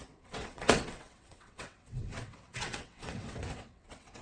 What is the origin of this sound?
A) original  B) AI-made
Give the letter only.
B